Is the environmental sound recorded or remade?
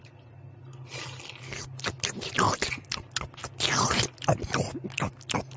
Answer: recorded